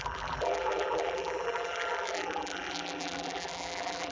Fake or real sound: fake